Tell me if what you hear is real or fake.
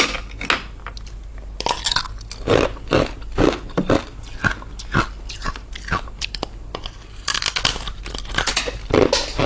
real